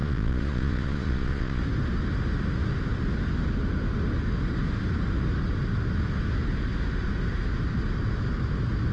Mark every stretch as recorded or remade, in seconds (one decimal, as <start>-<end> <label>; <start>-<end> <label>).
0.0-1.6 remade; 1.6-8.9 recorded